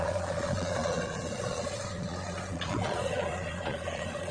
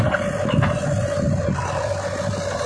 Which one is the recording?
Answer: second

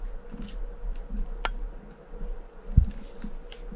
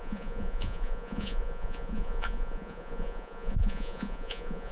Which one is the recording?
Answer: first